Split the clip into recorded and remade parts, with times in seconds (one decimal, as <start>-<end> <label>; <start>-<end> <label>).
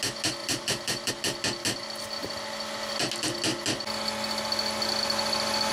0.0-0.4 recorded; 0.4-1.1 remade; 1.1-5.7 recorded